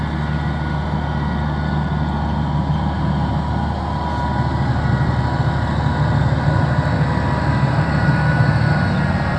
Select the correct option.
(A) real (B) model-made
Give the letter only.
A